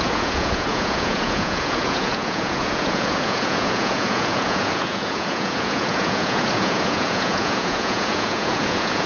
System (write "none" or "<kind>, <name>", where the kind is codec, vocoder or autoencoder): vocoder, Vocos